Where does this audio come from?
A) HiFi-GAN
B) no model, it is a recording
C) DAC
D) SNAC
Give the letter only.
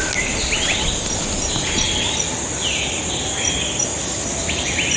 B